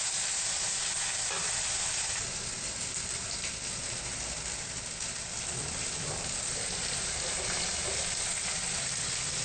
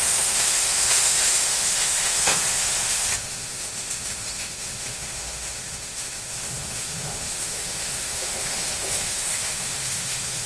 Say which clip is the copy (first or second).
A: second